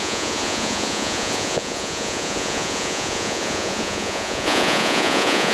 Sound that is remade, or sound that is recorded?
remade